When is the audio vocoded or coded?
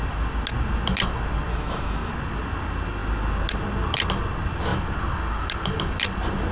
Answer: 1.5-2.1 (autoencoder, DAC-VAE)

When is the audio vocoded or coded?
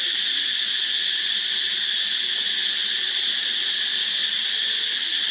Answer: 4.2-4.7 (vocoder, BigVGAN v2)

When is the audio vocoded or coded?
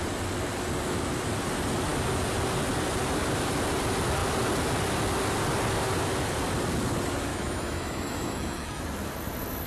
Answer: 7.3-8.8 (autoencoder, DAC-VAE)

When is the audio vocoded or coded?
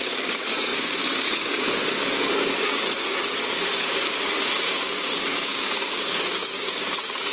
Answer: 0.0-7.3 (codec, DAC)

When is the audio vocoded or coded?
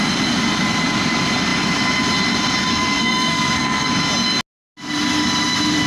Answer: 2.7-3.9 (codec, SNAC)